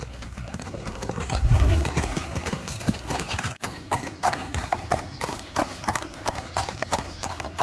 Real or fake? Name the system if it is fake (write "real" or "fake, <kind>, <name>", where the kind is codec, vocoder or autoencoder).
fake, codec, SNAC